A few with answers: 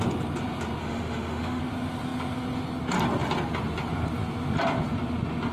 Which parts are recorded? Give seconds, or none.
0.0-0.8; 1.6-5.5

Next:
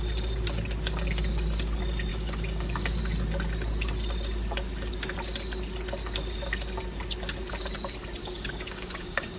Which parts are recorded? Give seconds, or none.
0.0-2.1; 3.0-8.2

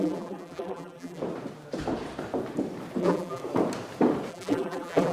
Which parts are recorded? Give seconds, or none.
1.2-3.0; 3.4-4.3